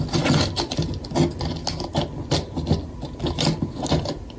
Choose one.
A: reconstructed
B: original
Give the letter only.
B